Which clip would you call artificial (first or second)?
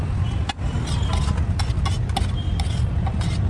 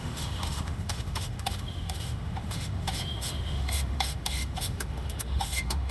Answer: second